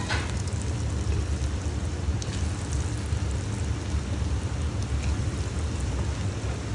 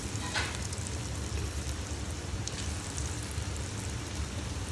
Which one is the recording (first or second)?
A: first